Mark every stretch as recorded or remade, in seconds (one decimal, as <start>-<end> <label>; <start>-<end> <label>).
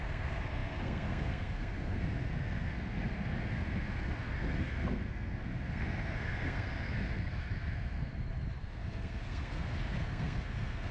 0.0-8.1 remade; 8.1-8.6 recorded; 8.6-10.9 remade